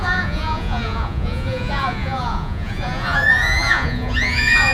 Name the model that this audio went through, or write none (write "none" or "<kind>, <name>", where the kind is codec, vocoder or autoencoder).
vocoder, Vocos